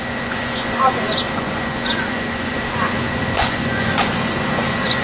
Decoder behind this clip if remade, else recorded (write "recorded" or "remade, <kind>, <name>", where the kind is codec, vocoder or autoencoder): remade, vocoder, Vocos